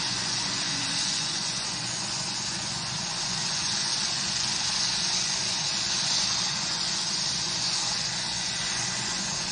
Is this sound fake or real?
fake